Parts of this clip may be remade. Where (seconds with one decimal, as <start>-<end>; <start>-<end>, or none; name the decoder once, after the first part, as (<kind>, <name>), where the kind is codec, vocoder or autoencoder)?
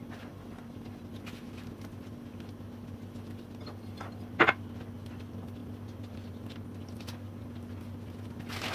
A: none